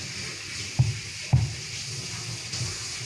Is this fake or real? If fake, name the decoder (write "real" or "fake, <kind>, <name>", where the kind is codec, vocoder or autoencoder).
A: real